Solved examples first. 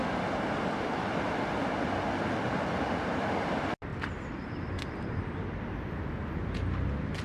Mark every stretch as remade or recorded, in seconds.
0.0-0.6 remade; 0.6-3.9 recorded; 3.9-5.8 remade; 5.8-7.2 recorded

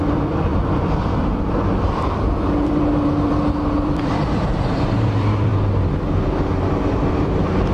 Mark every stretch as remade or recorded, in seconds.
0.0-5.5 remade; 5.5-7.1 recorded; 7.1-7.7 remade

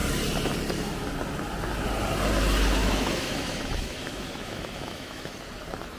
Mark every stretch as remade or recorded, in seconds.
0.0-2.8 recorded; 2.8-5.3 remade; 5.3-6.0 recorded